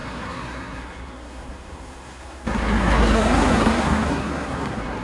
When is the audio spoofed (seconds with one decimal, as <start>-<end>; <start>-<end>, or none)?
0.0-5.0